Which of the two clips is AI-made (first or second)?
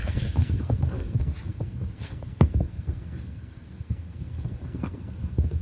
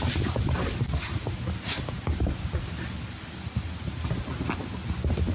first